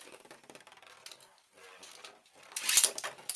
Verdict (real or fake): real